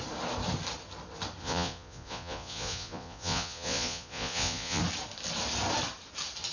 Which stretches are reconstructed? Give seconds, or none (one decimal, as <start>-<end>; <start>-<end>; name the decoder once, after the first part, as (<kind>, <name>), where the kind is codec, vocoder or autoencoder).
1.4-4.8 (vocoder, Vocos)